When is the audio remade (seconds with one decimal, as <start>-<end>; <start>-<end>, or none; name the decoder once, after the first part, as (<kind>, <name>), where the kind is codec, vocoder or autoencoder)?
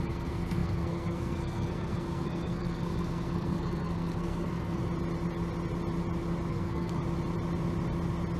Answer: 0.0-4.8 (codec, SNAC); 6.5-7.0